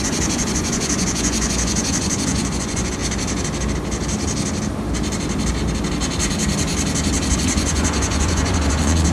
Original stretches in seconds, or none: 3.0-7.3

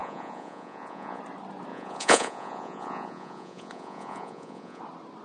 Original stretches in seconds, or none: 1.2-1.7; 4.8-5.2

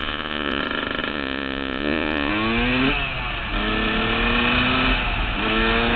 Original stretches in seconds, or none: 0.6-1.1; 2.3-6.0

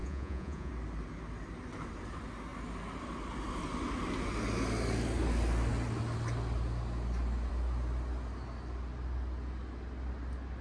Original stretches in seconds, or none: 0.7-10.6

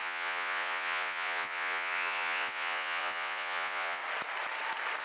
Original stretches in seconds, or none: 4.0-5.0

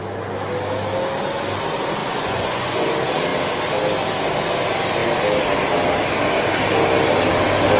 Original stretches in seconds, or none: 0.0-2.0; 2.9-7.8

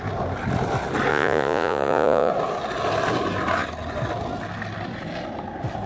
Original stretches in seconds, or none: 0.0-1.1; 2.3-5.9

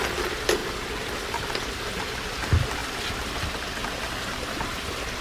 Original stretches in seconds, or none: 0.0-5.2